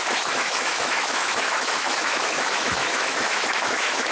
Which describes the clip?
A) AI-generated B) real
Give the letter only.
A